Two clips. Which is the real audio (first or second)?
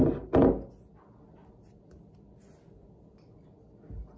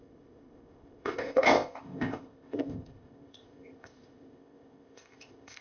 first